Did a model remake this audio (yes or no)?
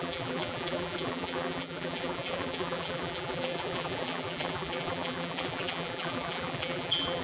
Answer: yes